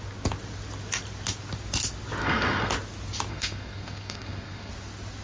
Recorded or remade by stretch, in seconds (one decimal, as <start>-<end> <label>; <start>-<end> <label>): 0.0-2.2 recorded; 2.2-2.7 remade; 2.7-3.3 recorded; 3.3-4.7 remade; 4.7-5.2 recorded